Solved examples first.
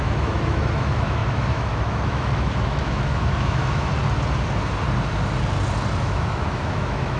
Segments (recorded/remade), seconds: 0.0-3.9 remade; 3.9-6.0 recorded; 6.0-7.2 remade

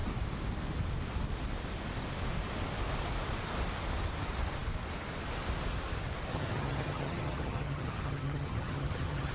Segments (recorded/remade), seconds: 0.0-6.3 recorded; 6.3-9.3 remade

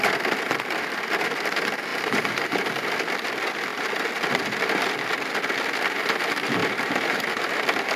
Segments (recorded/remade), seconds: 0.0-1.9 recorded; 1.9-2.7 remade; 2.7-6.6 recorded; 6.6-7.2 remade; 7.2-8.0 recorded

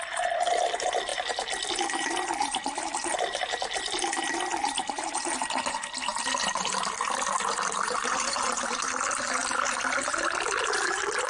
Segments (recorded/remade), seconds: 0.0-11.3 recorded

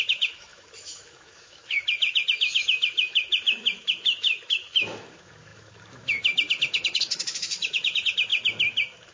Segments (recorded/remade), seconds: 0.0-9.1 remade